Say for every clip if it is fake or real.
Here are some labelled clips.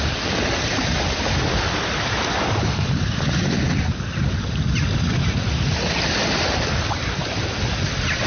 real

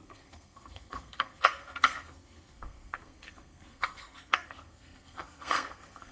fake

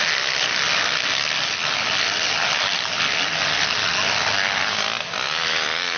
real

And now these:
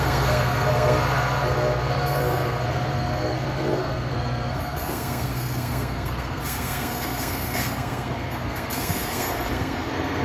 fake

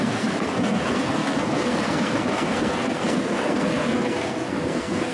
fake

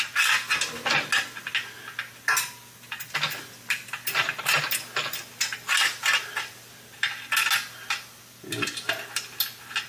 real